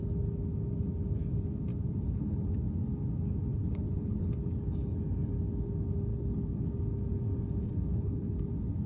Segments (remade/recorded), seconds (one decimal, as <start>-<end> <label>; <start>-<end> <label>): 0.0-1.7 recorded; 1.7-2.5 remade; 2.5-3.5 recorded; 3.5-4.5 remade; 4.5-6.1 recorded; 6.1-6.7 remade; 6.7-7.9 recorded; 7.9-8.5 remade; 8.5-8.9 recorded